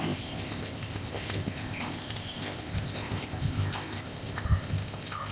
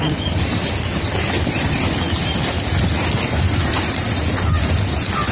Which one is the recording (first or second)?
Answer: second